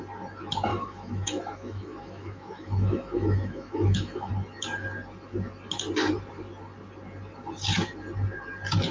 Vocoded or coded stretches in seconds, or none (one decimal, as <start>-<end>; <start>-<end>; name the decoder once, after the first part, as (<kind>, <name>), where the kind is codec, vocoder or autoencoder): 0.7-4.3 (autoencoder, DAC-VAE)